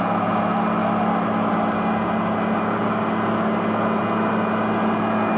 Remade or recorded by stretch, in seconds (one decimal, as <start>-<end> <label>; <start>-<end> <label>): 0.0-5.4 recorded